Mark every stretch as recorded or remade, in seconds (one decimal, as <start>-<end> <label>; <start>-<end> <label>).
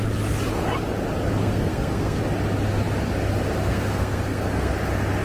0.0-1.4 recorded; 1.4-2.2 remade; 2.2-3.7 recorded; 3.7-4.7 remade; 4.7-5.2 recorded